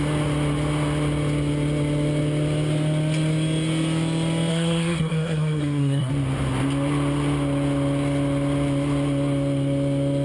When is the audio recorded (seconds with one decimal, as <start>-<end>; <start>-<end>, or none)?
0.0-4.5; 6.1-10.2